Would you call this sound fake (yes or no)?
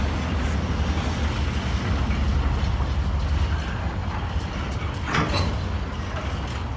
no